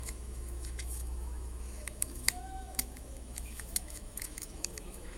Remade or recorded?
remade